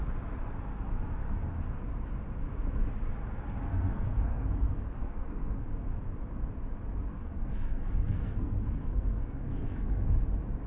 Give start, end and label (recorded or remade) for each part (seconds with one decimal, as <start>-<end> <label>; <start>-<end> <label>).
0.0-3.7 recorded; 3.7-5.6 remade; 5.6-7.1 recorded; 7.1-10.1 remade; 10.1-10.7 recorded